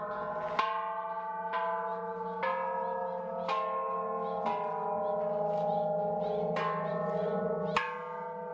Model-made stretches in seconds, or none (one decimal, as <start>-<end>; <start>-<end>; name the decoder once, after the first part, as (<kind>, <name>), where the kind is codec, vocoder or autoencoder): none